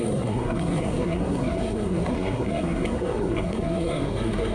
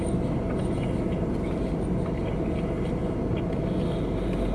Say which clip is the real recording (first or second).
second